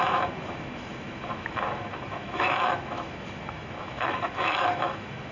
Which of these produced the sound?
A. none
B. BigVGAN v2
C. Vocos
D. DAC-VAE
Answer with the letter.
D